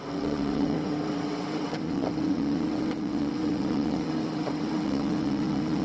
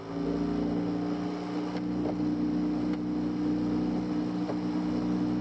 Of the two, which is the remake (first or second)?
first